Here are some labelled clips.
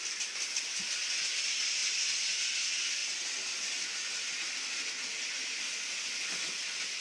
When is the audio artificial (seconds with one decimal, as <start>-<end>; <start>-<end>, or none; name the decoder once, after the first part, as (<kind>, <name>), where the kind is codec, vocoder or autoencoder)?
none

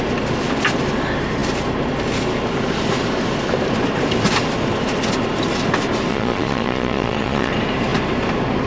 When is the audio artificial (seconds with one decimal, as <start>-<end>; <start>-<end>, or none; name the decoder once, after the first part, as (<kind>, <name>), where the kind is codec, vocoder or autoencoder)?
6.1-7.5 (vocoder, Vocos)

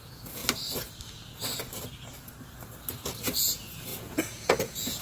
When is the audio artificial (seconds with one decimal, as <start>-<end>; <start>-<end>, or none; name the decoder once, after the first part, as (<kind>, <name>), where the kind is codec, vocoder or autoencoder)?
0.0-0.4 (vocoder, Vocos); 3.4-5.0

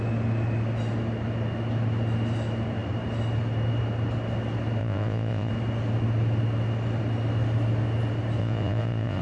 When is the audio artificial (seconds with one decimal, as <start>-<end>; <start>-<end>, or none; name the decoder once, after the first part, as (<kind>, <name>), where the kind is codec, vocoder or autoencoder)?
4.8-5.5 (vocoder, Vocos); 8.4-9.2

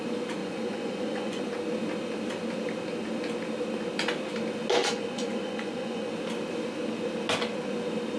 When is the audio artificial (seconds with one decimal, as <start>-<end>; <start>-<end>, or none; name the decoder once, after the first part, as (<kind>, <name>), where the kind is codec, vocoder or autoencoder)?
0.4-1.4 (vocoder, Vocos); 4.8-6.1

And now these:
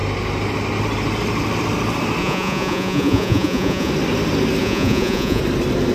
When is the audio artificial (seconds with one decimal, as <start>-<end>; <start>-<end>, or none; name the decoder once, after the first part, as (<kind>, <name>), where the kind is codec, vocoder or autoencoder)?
2.2-3.9 (vocoder, Vocos); 4.6-5.4

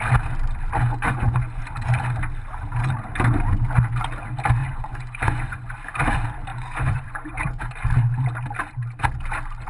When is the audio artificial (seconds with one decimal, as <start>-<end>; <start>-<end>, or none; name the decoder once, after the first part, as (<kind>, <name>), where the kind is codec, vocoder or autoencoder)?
0.8-1.6 (vocoder, Vocos); 4.6-5.7; 6.5-7.7